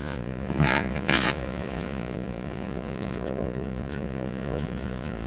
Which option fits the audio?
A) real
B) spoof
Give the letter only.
B